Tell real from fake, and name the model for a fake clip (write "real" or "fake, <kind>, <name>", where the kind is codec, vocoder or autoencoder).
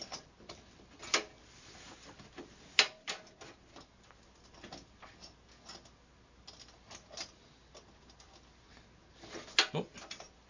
real